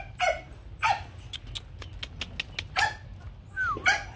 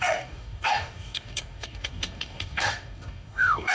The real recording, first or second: first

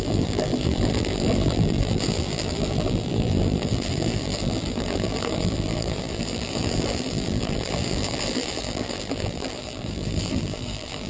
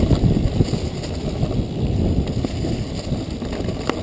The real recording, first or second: second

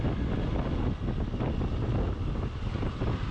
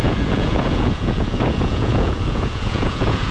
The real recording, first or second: first